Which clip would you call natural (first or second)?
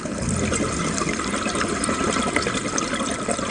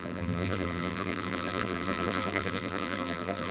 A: first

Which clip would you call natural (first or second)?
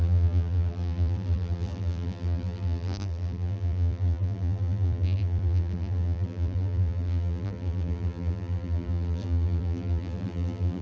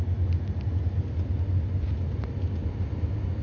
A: second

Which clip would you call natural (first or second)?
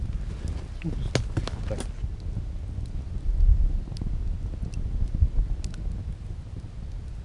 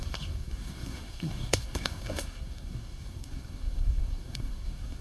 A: first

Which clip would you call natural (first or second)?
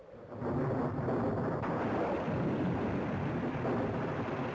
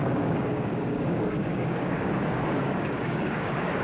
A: first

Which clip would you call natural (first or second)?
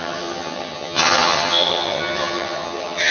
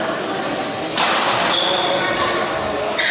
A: second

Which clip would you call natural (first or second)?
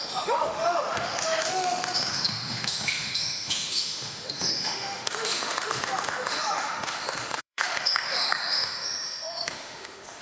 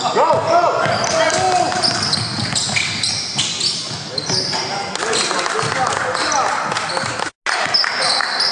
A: second